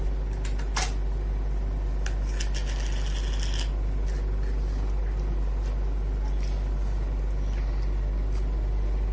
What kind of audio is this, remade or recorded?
recorded